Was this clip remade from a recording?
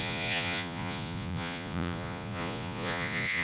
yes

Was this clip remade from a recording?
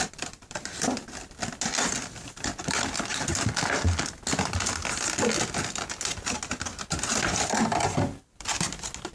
no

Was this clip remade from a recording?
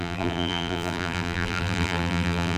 yes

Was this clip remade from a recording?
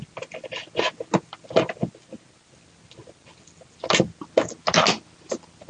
no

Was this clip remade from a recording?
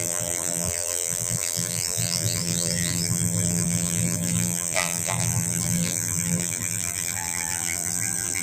yes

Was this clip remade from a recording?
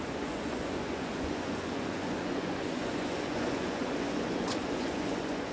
yes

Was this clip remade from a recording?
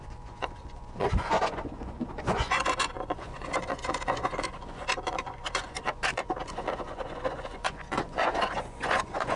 yes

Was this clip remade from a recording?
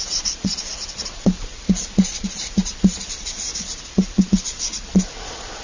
yes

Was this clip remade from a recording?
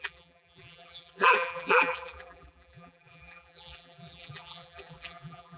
yes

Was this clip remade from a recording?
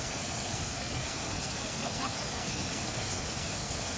yes